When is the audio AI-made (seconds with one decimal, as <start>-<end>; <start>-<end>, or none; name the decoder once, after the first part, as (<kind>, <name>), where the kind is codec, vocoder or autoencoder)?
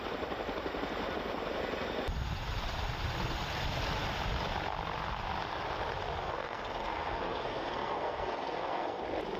6.2-9.0 (codec, SNAC)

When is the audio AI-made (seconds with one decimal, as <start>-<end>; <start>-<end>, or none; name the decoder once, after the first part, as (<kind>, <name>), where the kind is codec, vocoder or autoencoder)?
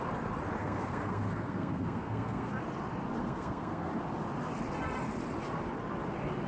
0.6-2.5 (codec, SNAC); 3.2-3.9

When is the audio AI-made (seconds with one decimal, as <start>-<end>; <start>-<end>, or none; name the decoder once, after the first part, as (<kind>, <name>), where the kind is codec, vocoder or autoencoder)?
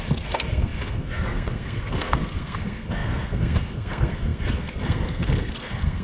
0.0-6.0 (codec, SNAC)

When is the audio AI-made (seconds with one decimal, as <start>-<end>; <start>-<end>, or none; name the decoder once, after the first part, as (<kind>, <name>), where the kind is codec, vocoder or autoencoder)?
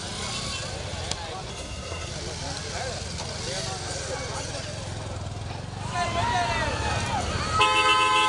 1.5-2.1 (codec, SNAC)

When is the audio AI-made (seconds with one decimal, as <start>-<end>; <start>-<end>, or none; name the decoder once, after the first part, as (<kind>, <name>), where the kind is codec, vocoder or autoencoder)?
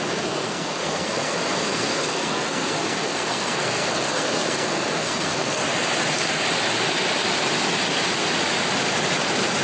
0.0-5.6 (codec, SNAC)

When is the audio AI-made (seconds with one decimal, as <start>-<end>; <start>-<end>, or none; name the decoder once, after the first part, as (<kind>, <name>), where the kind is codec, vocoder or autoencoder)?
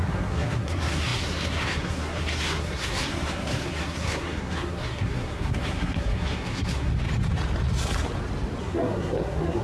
0.0-6.9 (codec, SNAC); 8.6-9.6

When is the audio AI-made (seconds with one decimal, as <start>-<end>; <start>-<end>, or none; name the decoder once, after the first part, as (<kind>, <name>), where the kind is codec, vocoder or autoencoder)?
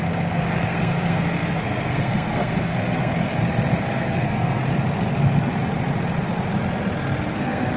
0.0-3.1 (codec, SNAC); 3.8-4.6; 7.3-7.8